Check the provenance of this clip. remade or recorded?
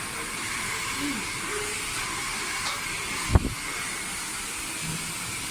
recorded